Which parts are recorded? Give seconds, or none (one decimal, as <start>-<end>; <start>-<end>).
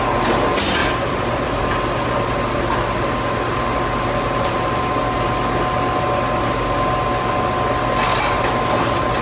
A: 0.0-0.8; 1.6-9.2